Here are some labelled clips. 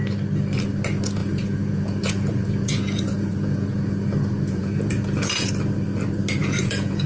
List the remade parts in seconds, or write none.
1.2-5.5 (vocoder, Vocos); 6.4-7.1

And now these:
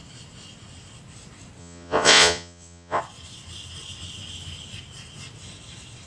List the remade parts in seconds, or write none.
1.6-3.0 (vocoder, Vocos)

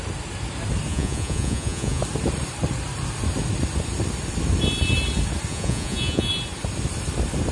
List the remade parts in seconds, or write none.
0.9-2.0 (vocoder, Vocos); 5.5-6.3

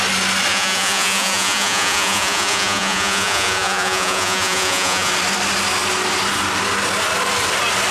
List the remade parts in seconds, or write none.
0.5-5.1 (vocoder, Vocos)

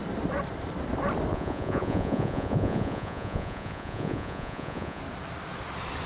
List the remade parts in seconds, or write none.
1.3-5.0 (vocoder, Vocos)

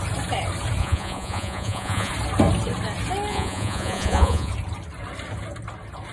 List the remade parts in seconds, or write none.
0.8-2.1 (vocoder, Vocos); 3.3-4.5